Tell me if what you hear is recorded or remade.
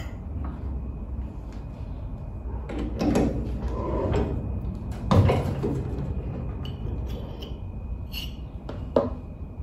recorded